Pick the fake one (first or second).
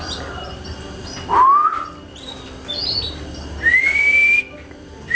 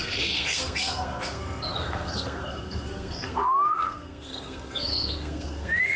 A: second